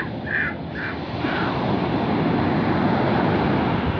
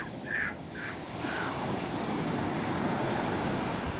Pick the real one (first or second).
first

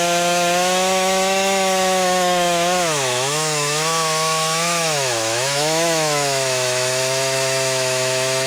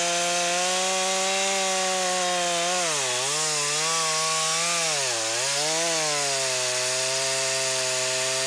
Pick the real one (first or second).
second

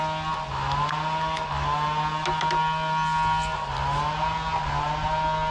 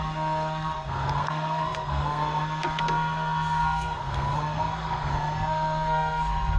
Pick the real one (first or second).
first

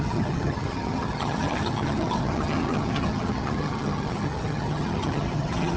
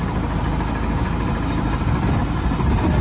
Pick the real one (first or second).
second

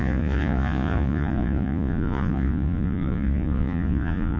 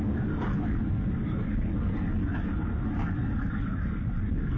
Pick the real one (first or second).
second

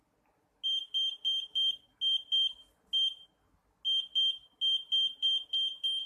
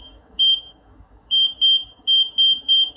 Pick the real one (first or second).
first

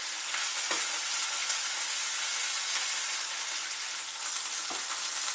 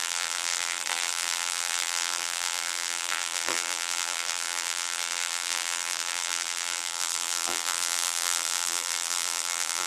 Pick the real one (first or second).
first